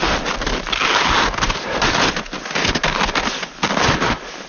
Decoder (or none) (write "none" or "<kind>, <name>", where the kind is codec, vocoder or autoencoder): none